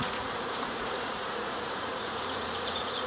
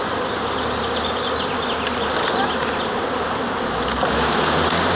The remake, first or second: first